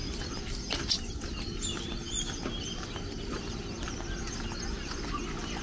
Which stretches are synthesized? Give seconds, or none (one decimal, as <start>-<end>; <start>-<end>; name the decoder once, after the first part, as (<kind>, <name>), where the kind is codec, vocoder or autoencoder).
none